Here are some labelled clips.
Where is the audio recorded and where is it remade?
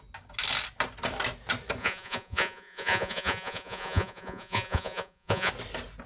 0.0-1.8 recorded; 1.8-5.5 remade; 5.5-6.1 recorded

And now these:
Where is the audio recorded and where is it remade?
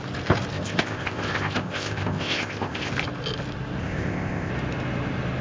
0.0-0.5 recorded; 0.5-2.9 remade; 2.9-3.8 recorded; 3.8-4.5 remade; 4.5-5.4 recorded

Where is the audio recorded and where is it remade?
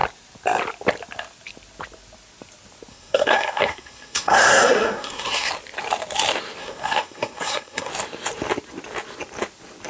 0.0-2.9 recorded; 2.9-5.5 remade; 5.5-6.6 recorded; 6.6-7.9 remade; 7.9-9.9 recorded